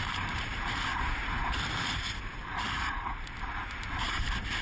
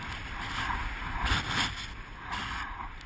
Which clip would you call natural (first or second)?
second